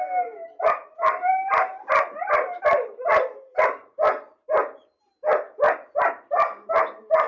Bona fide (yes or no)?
yes